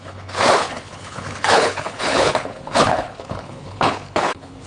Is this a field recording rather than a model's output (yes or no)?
no